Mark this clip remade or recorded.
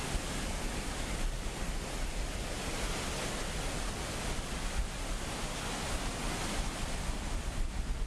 recorded